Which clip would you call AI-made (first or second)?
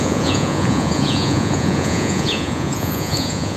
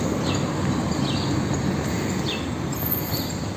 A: first